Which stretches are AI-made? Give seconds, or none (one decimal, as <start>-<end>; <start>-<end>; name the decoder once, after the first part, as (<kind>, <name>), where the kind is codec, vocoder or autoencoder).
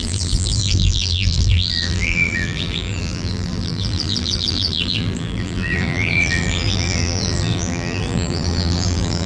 0.0-9.3 (vocoder, BigVGAN v2)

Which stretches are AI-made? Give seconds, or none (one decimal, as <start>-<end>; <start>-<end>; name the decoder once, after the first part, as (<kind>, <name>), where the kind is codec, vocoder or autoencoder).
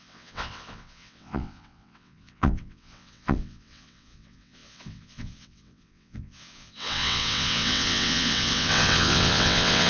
0.0-9.9 (vocoder, WaveNeXt)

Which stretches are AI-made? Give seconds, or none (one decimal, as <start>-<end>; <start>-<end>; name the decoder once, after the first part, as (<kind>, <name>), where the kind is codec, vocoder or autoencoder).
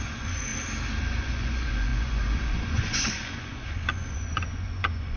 0.0-0.5 (vocoder, Vocos); 1.0-5.2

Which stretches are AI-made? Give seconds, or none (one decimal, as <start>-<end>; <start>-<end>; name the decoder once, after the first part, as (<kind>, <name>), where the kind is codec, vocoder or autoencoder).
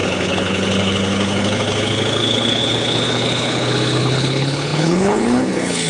0.0-5.9 (codec, HILCodec)